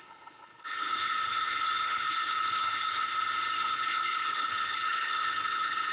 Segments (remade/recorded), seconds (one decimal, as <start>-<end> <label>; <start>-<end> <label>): 0.0-3.1 remade; 3.1-3.6 recorded; 3.6-5.9 remade